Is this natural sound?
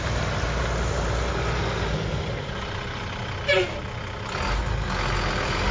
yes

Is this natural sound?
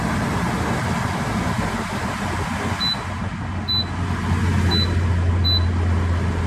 yes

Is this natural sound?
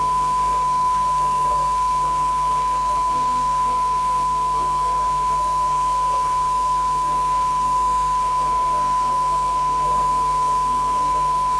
no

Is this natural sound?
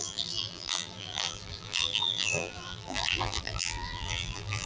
no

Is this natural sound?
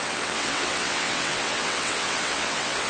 no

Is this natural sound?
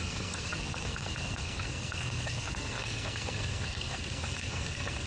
no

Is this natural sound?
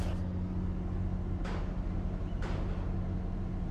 yes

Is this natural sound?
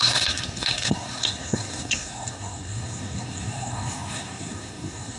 no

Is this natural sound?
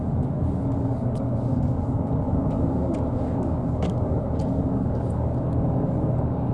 no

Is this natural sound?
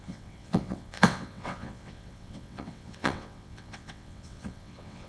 no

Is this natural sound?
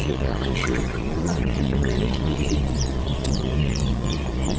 no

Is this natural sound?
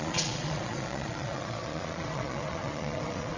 no